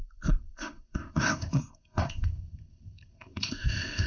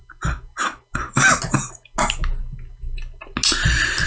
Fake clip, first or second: first